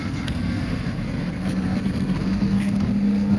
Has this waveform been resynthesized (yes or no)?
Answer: yes